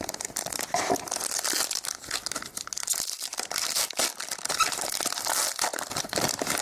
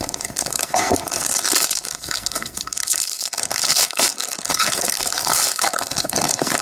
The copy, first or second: second